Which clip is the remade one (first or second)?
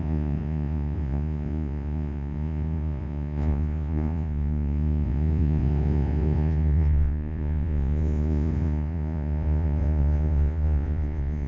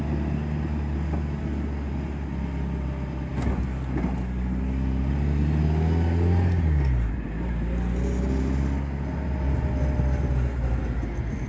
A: first